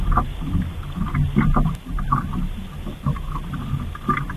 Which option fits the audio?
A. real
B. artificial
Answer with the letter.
A